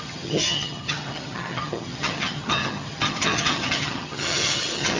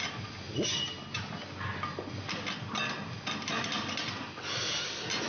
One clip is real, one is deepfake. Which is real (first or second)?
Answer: second